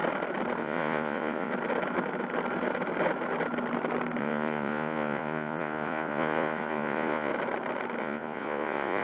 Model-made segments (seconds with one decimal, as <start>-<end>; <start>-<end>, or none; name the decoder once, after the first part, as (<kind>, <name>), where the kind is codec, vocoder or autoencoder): 0.6-1.5 (vocoder, Vocos); 4.2-7.3; 8.0-9.0